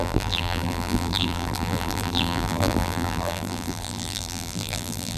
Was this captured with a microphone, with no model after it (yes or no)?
no